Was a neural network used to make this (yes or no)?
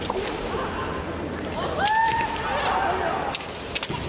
no